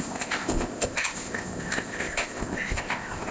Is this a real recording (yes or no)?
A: no